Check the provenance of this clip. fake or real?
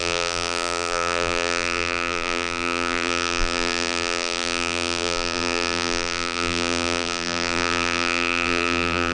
fake